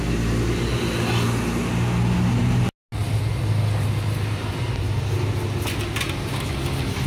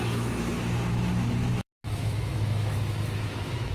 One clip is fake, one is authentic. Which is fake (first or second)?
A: second